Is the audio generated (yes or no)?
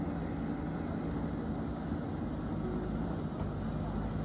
no